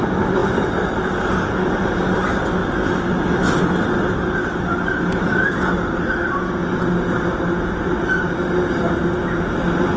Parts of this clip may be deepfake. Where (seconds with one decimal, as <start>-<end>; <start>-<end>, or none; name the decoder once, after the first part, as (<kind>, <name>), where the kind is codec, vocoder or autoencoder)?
none

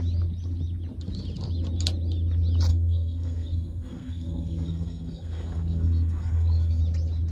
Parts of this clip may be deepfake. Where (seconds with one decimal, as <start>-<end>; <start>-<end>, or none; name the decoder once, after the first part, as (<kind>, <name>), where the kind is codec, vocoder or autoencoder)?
2.7-6.8 (codec, SNAC)

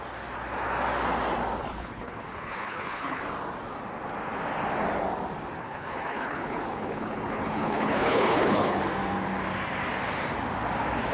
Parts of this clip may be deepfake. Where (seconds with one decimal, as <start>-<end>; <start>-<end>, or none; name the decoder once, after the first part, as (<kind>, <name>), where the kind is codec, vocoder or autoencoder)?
1.6-3.2 (codec, HILCodec); 5.6-8.8

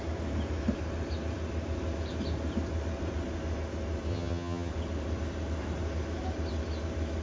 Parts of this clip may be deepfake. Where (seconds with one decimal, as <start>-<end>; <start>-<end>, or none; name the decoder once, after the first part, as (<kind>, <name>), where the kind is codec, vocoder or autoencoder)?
4.1-4.7 (vocoder, HiFi-GAN)

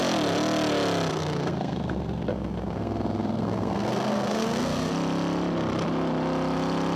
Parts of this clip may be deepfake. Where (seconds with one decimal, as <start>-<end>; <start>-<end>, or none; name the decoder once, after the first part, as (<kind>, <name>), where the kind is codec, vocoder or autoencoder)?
1.1-4.9 (codec, SNAC)

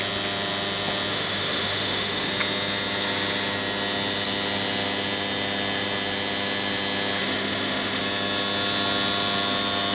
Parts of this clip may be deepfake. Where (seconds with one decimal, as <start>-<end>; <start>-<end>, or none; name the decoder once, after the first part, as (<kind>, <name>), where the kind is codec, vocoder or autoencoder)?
1.1-2.3 (autoencoder, DAC-VAE); 7.2-8.0

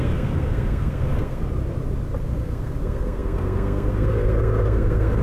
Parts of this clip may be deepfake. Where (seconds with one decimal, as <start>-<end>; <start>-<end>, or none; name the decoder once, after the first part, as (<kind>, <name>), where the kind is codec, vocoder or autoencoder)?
0.0-1.4 (codec, SNAC); 2.2-5.2

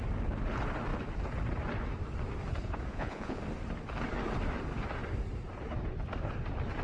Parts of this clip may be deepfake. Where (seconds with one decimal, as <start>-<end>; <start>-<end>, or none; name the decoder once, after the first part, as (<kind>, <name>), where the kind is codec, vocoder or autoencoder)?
2.9-3.4 (vocoder, Vocos)